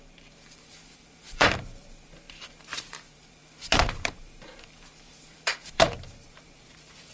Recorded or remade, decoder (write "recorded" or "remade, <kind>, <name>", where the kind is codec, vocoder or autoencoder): remade, vocoder, BigVGAN v2